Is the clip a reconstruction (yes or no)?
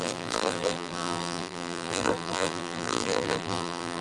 yes